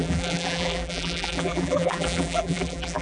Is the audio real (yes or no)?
no